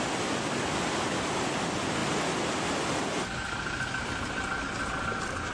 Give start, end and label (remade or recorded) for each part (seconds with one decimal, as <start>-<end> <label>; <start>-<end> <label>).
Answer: 0.0-5.5 recorded